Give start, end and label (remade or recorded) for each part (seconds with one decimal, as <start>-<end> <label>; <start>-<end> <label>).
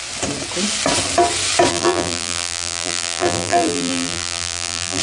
0.0-1.7 recorded; 1.7-5.0 remade